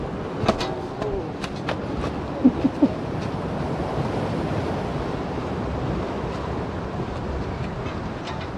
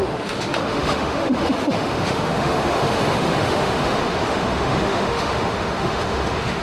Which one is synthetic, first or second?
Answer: second